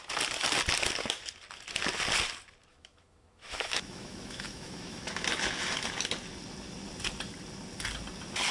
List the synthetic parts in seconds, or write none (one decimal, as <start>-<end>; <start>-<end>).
2.7-5.2